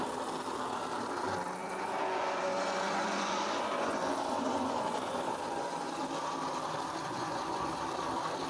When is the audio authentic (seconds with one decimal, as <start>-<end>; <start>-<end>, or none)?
0.0-1.6; 6.0-7.1; 7.7-8.5